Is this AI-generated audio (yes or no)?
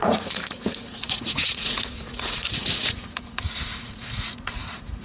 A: yes